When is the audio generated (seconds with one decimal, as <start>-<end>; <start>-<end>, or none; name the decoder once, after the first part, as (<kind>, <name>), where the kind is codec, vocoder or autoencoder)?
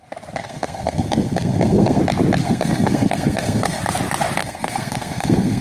0.4-2.0 (codec, SNAC); 2.4-3.8; 4.4-5.6